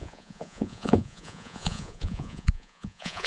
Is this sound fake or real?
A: fake